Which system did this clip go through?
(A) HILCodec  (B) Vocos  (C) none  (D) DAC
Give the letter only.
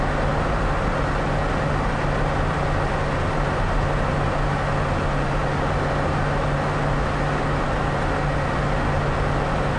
C